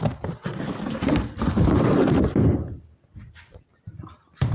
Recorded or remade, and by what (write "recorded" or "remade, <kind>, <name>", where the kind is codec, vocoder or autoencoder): recorded